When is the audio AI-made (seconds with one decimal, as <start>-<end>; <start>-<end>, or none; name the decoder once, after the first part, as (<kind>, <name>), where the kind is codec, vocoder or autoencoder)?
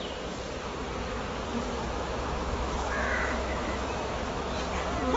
1.5-4.6 (autoencoder, DAC-VAE)